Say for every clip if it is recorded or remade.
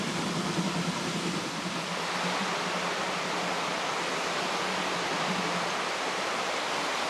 recorded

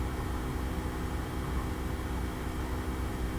recorded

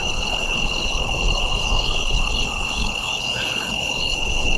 remade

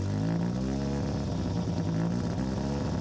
recorded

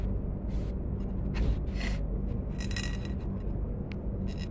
recorded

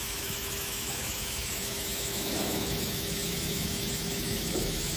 remade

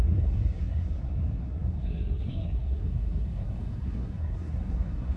remade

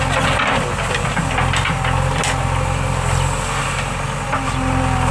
recorded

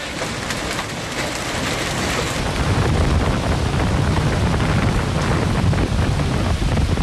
remade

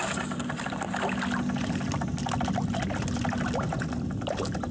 recorded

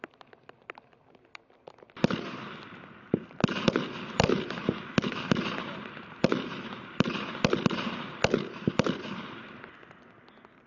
recorded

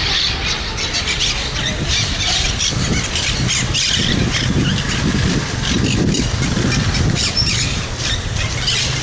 recorded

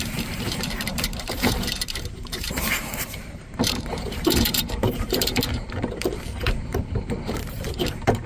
remade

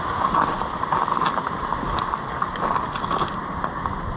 recorded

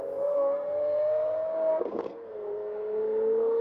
remade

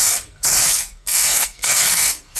remade